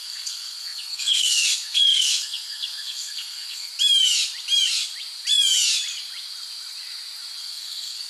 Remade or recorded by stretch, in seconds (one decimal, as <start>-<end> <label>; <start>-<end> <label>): 0.0-3.7 remade; 3.7-7.4 recorded; 7.4-8.1 remade